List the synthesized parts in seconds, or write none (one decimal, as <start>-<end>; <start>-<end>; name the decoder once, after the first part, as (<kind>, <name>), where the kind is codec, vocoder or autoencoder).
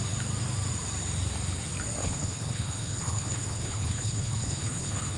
2.0-5.2 (codec, HILCodec)